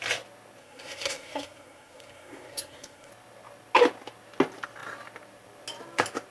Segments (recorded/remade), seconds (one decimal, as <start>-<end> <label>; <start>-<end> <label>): 0.0-0.6 recorded; 0.6-3.1 remade; 3.1-6.3 recorded